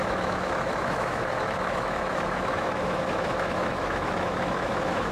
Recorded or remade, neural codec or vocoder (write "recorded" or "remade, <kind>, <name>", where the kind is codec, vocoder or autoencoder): remade, autoencoder, DAC-VAE